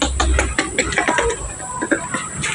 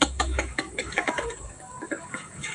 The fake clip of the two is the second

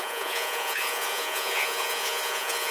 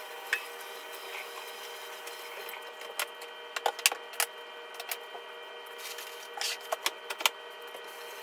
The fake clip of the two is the first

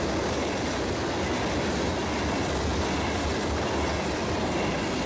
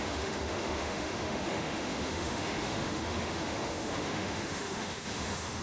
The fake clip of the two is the second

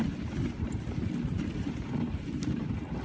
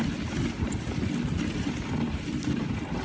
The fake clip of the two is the first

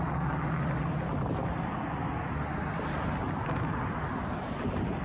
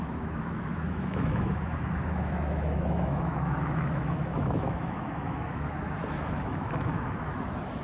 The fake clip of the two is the second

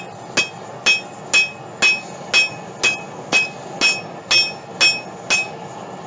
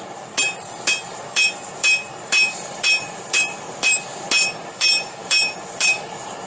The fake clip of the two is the second